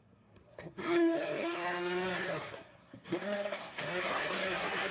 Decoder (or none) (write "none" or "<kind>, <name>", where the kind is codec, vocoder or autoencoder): codec, SNAC